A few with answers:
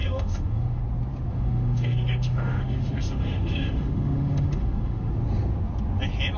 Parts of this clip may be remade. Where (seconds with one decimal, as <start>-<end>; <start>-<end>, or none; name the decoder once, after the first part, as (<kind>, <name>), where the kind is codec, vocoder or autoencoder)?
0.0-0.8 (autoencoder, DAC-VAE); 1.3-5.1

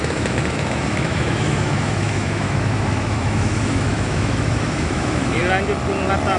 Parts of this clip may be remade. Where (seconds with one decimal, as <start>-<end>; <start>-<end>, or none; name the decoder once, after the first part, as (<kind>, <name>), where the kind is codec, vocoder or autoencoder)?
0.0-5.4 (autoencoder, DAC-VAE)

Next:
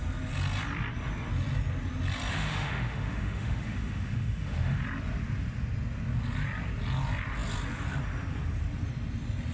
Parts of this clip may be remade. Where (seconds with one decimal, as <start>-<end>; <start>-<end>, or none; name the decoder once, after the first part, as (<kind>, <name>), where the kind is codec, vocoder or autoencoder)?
2.3-4.8 (autoencoder, DAC-VAE)

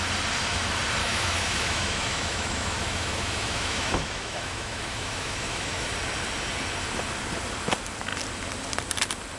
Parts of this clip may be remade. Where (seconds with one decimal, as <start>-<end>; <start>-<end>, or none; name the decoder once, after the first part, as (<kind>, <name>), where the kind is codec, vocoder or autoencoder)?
1.0-5.9 (autoencoder, DAC-VAE)

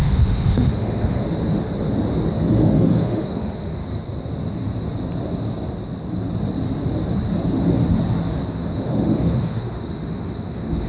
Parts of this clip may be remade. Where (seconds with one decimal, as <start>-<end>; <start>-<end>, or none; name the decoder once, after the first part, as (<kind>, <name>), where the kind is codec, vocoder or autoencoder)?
0.0-1.2 (autoencoder, DAC-VAE); 2.5-3.8; 8.5-10.9

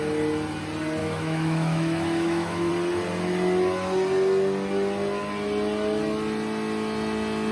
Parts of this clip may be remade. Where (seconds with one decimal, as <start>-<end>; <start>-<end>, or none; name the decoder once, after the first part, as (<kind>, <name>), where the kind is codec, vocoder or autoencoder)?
1.0-2.7 (autoencoder, DAC-VAE)

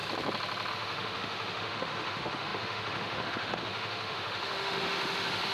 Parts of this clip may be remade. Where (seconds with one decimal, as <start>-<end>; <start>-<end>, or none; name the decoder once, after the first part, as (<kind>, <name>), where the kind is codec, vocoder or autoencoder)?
0.7-5.5 (autoencoder, DAC-VAE)